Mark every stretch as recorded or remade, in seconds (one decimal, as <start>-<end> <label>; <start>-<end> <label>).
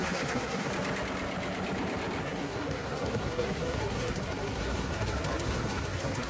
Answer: 0.0-0.7 remade; 0.7-2.2 recorded; 2.2-6.3 remade